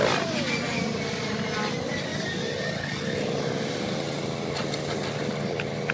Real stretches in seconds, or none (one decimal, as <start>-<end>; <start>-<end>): 0.0-5.9